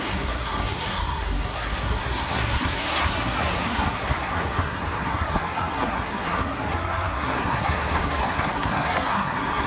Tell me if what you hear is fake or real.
fake